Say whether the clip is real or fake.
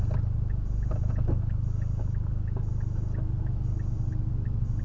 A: real